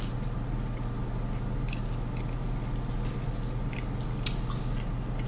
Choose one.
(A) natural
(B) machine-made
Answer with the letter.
A